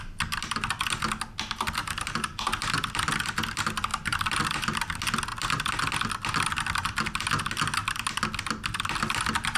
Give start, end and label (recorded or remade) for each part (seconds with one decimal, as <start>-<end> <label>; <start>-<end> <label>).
0.0-1.8 recorded; 1.8-2.4 remade; 2.4-3.9 recorded; 3.9-4.4 remade; 4.4-9.6 recorded